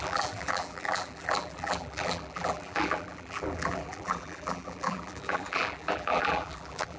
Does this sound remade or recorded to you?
remade